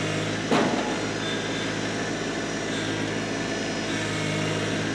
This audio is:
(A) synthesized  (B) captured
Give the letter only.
B